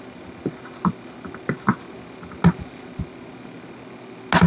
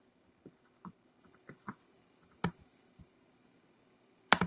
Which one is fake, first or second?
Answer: second